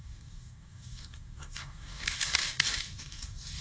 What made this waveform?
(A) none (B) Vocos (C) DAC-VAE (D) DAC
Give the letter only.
D